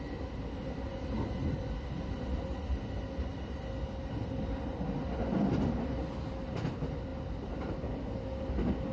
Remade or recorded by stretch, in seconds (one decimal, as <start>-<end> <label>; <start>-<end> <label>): 0.0-8.9 recorded